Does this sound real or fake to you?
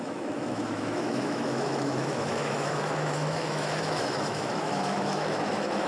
fake